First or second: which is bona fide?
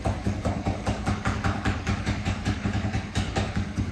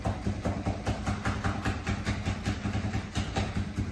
second